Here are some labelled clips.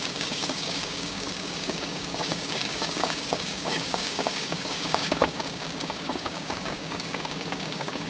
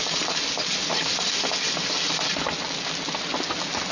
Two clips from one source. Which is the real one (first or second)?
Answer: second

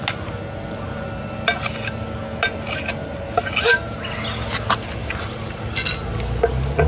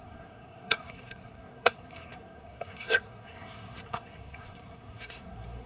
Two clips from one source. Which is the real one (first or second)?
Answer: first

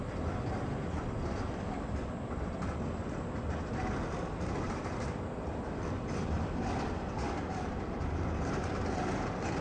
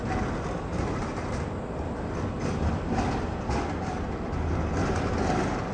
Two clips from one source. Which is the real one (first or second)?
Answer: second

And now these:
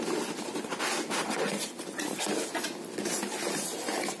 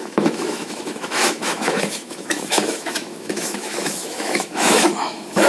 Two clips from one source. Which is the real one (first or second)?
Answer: first